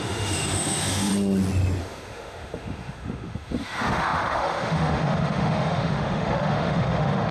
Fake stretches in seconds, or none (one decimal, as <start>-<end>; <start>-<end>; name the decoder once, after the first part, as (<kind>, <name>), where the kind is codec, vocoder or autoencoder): 0.0-1.1 (autoencoder, DAC-VAE); 1.8-7.3